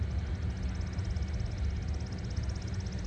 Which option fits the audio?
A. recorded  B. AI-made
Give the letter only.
A